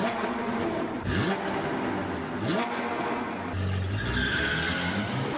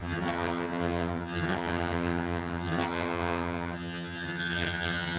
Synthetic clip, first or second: second